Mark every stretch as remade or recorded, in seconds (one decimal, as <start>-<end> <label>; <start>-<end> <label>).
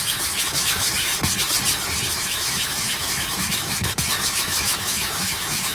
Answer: 0.0-1.1 remade; 1.1-2.1 recorded; 2.1-5.7 remade